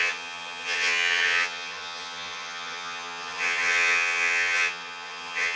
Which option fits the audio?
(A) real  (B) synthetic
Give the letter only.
B